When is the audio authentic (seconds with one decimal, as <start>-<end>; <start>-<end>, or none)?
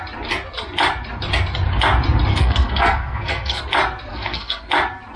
0.0-2.3; 3.6-4.1; 4.7-5.2